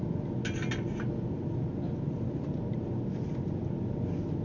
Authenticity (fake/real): real